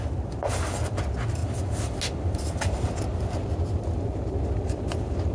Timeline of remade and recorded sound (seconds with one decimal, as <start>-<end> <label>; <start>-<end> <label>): 0.0-5.3 recorded